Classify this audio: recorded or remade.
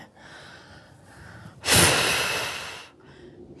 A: recorded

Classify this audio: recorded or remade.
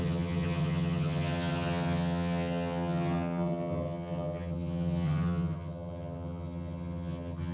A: remade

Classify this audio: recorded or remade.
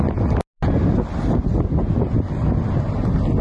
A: recorded